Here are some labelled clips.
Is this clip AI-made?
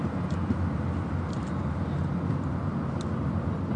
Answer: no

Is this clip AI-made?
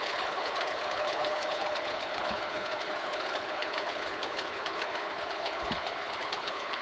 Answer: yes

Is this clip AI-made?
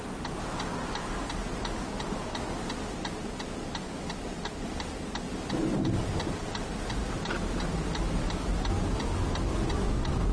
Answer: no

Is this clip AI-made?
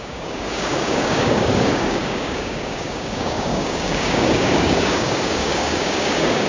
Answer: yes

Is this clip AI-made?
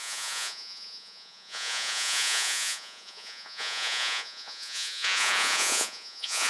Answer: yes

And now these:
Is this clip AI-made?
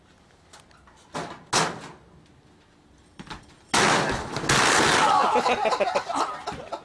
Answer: no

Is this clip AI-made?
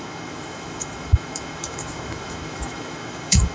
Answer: yes